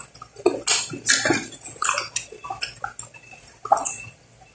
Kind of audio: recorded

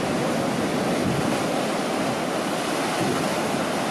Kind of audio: recorded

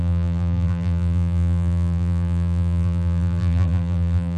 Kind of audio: remade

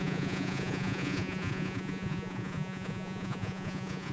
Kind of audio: remade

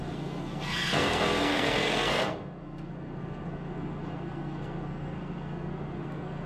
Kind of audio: remade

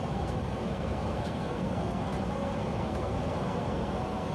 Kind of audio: remade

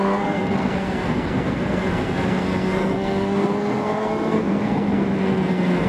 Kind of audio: remade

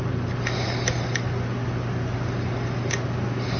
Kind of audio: recorded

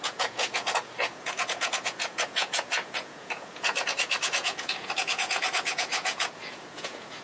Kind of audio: remade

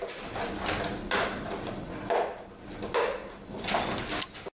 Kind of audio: recorded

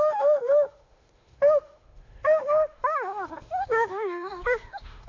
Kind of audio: remade